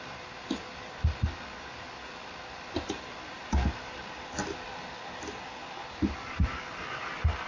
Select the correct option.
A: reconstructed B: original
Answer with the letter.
B